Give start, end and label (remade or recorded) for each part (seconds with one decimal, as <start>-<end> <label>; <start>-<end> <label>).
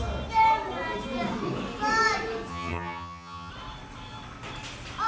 0.0-2.5 recorded; 2.5-3.5 remade; 3.5-5.1 recorded